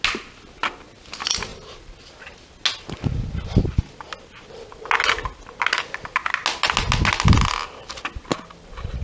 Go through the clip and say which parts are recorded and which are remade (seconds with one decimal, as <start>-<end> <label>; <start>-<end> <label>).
0.0-9.0 recorded